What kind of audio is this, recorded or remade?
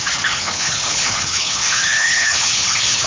remade